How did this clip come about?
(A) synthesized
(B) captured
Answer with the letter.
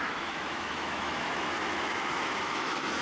A